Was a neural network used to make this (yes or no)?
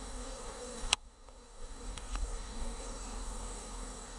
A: yes